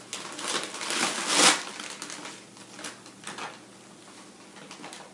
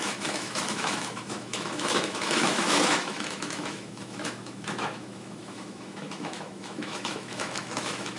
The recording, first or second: first